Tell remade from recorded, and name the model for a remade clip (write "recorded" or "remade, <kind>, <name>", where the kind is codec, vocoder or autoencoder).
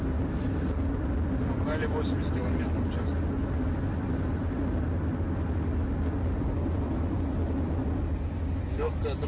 recorded